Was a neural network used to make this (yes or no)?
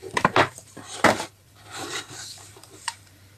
yes